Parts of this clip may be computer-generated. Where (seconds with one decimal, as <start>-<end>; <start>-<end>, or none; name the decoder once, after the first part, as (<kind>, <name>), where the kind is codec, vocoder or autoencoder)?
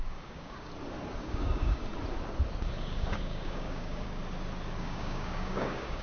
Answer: 0.0-0.7 (codec, DAC); 1.2-1.8; 2.8-4.2; 4.8-6.0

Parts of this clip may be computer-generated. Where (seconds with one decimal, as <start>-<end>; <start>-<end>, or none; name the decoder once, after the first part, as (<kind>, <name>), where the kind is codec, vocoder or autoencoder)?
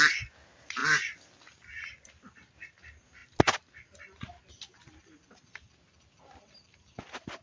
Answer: none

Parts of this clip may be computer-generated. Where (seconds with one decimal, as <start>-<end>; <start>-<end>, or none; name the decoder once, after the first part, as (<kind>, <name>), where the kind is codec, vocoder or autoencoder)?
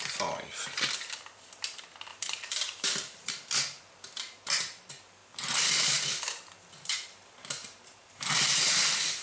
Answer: 2.1-3.3 (vocoder, BigVGAN v2); 7.6-8.6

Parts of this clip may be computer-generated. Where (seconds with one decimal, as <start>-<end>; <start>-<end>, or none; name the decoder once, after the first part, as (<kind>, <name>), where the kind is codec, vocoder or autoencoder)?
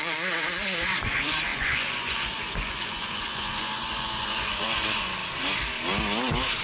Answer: 0.0-5.2 (vocoder, Vocos)